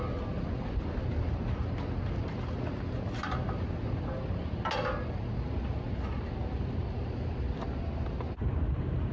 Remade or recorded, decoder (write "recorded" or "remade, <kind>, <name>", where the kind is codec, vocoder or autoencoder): recorded